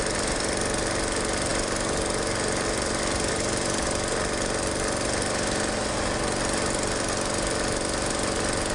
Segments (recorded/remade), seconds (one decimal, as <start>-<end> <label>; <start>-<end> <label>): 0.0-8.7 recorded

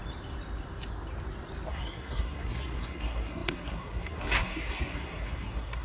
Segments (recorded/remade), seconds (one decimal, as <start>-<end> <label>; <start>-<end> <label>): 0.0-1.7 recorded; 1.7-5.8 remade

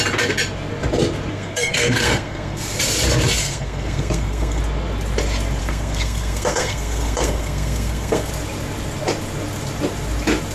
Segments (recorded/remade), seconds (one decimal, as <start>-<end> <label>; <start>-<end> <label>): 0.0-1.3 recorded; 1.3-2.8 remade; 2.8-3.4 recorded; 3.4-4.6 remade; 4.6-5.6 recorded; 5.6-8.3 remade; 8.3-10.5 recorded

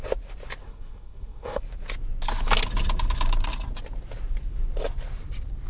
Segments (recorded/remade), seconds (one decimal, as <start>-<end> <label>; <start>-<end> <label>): 0.0-0.6 recorded; 0.6-1.6 remade; 1.6-5.7 recorded

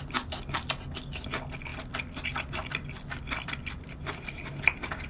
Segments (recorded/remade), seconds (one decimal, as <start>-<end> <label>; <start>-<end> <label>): 0.0-5.1 recorded

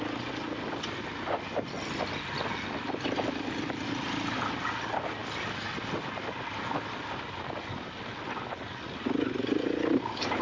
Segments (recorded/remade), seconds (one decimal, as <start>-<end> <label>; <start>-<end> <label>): 0.0-10.4 recorded